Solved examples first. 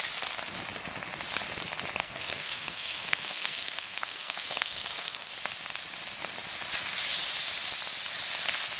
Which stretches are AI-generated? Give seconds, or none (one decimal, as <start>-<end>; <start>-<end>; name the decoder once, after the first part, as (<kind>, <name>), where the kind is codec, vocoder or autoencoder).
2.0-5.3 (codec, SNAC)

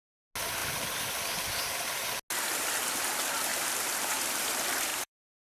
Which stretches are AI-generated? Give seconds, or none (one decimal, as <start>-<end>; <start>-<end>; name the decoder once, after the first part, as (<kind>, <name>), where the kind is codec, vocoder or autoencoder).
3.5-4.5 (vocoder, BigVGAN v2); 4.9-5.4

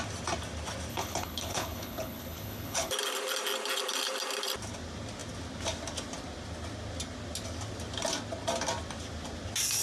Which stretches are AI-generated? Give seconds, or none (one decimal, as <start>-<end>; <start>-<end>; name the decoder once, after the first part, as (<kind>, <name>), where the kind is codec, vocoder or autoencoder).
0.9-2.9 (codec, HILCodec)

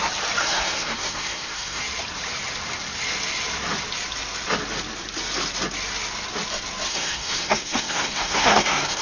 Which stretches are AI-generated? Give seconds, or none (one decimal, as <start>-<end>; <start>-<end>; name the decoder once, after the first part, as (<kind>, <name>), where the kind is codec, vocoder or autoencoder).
0.4-1.8 (codec, SNAC); 6.9-9.0